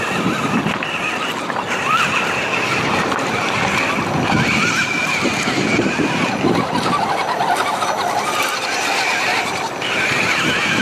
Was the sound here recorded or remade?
recorded